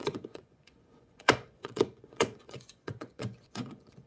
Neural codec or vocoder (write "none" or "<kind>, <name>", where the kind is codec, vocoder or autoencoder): vocoder, Vocos